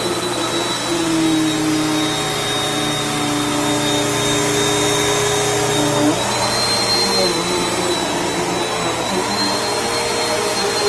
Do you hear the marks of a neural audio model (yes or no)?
no